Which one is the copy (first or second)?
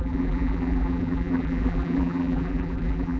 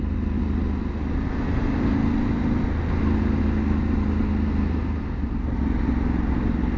first